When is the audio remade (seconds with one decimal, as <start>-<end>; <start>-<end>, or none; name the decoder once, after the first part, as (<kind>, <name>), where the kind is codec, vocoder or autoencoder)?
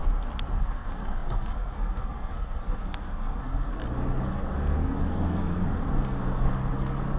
0.6-7.2 (codec, SNAC)